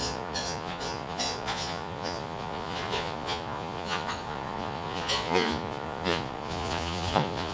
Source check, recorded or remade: remade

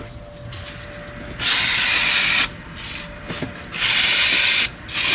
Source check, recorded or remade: recorded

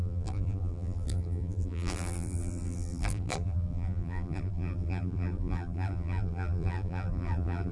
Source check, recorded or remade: remade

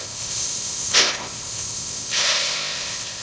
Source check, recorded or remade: remade